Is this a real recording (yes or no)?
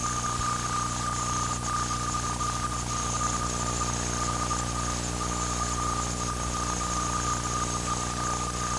yes